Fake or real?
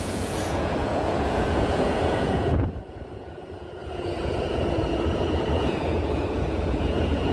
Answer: fake